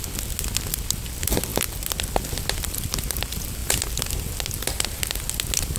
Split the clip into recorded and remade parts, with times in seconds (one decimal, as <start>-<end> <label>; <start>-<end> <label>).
0.0-5.8 recorded